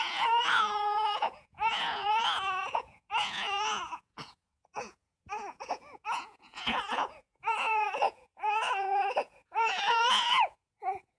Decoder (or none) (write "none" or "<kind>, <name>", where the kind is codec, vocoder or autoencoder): vocoder, Vocos